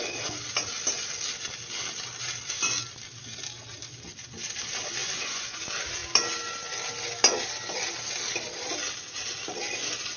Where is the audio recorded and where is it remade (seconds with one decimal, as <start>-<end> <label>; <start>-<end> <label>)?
0.0-5.0 recorded; 5.0-5.6 remade; 5.6-10.2 recorded